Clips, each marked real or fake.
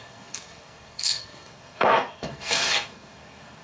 fake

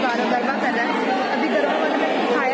real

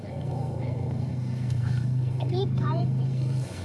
fake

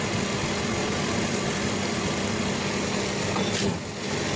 real